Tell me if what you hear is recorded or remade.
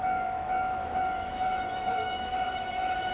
remade